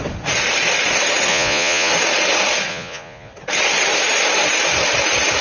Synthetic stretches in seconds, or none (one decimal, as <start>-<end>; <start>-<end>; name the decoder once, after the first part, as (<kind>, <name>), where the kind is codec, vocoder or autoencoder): 1.3-1.9 (vocoder, Vocos); 2.7-3.3